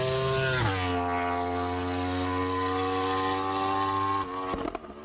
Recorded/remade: recorded